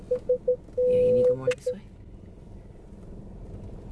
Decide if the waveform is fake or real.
real